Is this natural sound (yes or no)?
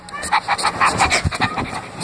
yes